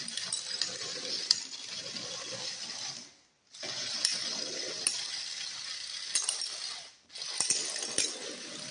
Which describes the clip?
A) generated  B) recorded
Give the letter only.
B